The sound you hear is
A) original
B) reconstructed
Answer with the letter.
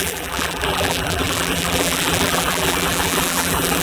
B